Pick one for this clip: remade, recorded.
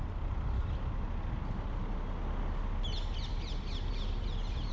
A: recorded